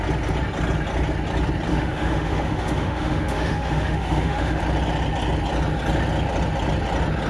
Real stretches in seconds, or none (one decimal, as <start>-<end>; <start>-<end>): 0.0-1.7; 4.6-7.3